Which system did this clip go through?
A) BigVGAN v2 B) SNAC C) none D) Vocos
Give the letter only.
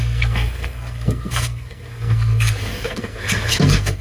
B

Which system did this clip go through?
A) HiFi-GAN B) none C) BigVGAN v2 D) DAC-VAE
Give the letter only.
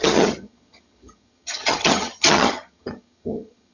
A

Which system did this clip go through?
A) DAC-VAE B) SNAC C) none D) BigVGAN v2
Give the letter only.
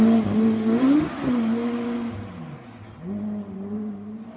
C